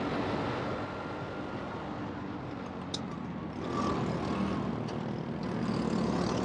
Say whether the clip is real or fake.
real